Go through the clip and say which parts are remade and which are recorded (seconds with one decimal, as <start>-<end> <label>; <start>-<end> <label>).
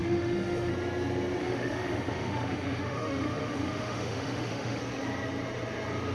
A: 0.0-0.7 remade; 0.7-1.4 recorded; 1.4-4.8 remade; 4.8-6.1 recorded